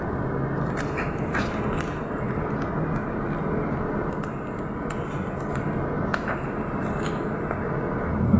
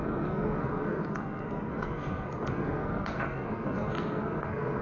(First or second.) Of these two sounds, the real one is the first